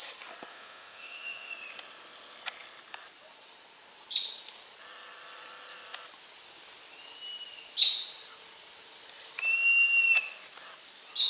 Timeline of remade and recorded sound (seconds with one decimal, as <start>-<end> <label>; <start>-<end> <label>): 0.0-0.5 recorded; 0.5-1.5 remade; 1.5-11.3 recorded

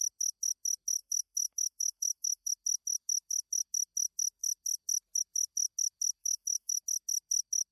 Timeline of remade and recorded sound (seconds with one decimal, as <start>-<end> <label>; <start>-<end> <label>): 0.0-1.0 recorded; 1.0-2.5 remade; 2.5-6.2 recorded; 6.2-6.8 remade; 6.8-7.7 recorded

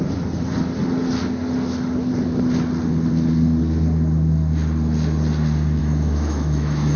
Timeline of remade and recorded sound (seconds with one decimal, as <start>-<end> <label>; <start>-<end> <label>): 0.0-5.8 recorded; 5.8-7.0 remade